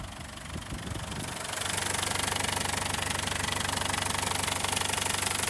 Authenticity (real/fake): real